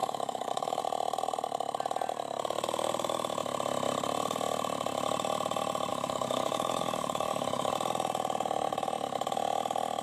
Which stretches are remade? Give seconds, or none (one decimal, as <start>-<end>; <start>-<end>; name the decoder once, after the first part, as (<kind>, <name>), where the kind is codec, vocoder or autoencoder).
0.0-0.8 (codec, DAC); 5.9-7.7